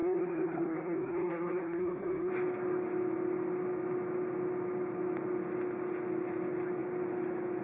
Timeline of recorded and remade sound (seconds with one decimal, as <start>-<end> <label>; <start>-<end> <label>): 0.0-2.3 remade; 2.3-7.6 recorded

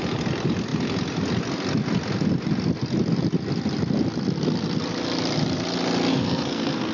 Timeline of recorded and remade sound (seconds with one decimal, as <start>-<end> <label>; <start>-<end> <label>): 0.0-6.1 recorded; 6.1-6.9 remade

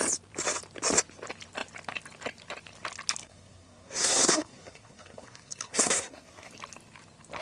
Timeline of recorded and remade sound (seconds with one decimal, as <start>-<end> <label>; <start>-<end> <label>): 0.0-3.2 recorded; 3.2-6.5 remade; 6.5-7.4 recorded